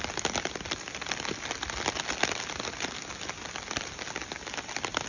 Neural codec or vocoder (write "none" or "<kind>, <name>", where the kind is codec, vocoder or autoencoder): none